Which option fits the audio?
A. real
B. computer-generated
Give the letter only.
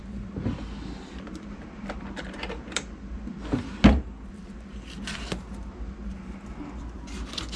A